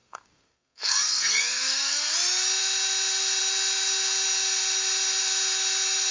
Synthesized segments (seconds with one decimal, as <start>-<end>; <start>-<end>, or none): 0.0-2.1